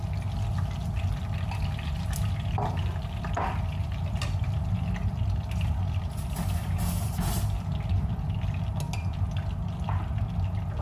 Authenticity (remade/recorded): recorded